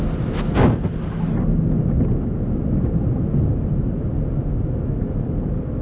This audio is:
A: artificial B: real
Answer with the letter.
B